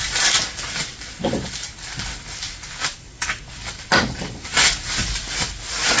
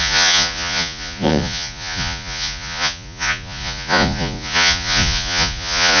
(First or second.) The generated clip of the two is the second